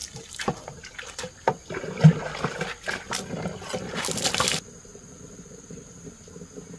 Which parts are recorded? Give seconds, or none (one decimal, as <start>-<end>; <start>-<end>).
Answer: 0.0-4.9; 5.8-6.8